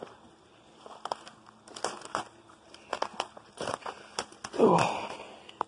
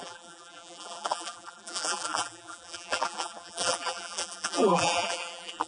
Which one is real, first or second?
first